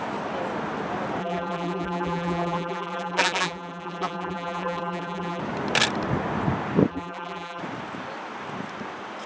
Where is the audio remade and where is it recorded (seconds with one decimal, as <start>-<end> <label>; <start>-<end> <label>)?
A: 0.0-1.2 recorded; 1.2-5.4 remade; 5.4-6.9 recorded; 6.9-7.6 remade; 7.6-9.3 recorded